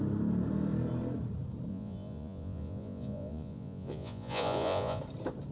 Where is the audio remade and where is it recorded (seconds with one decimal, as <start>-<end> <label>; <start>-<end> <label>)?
0.0-1.7 recorded; 1.7-5.0 remade; 5.0-5.5 recorded